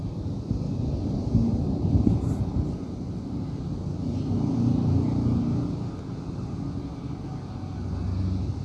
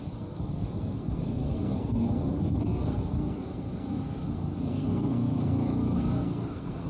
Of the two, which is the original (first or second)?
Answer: first